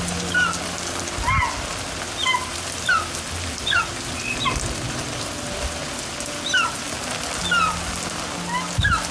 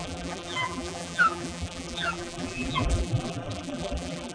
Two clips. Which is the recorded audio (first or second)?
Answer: first